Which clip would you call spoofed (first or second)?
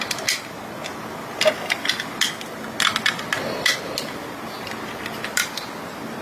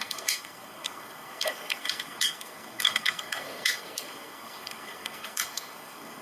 second